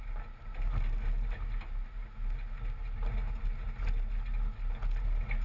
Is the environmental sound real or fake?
real